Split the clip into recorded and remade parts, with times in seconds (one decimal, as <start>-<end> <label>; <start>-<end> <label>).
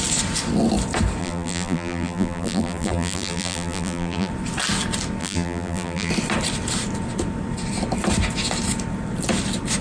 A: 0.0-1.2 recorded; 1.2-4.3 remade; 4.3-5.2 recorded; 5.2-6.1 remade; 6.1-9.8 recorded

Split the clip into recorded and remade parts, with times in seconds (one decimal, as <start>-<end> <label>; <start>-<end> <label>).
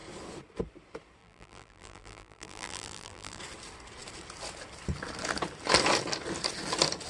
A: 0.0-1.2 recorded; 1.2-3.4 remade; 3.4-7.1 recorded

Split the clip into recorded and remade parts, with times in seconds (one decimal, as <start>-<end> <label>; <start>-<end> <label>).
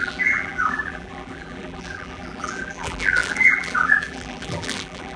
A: 0.0-5.2 remade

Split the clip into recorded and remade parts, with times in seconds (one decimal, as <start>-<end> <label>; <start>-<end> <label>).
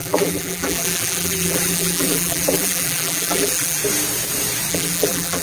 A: 0.0-3.8 remade; 3.8-4.7 recorded; 4.7-5.4 remade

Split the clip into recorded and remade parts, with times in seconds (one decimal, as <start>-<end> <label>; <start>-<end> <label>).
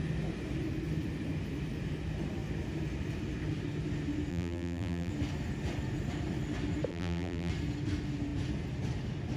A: 0.0-4.3 recorded; 4.3-5.1 remade; 5.1-6.9 recorded; 6.9-7.5 remade; 7.5-9.4 recorded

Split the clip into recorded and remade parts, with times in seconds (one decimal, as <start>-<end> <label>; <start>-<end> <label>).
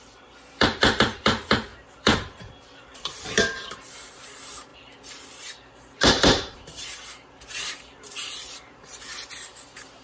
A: 0.0-10.0 remade